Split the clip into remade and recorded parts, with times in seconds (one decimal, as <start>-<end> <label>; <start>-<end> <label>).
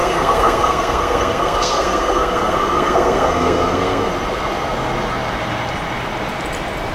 0.0-4.1 remade; 4.1-6.9 recorded